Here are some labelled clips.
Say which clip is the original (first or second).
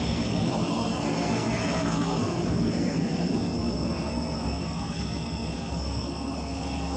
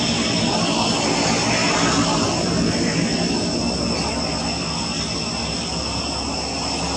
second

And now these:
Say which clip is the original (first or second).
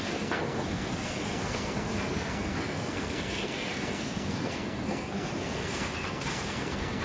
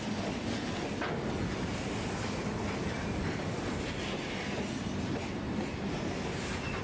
second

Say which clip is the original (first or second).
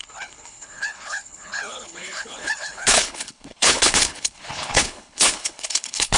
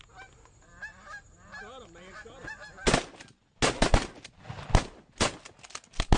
second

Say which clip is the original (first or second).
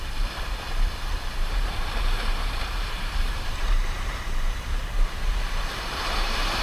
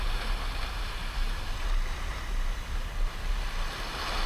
second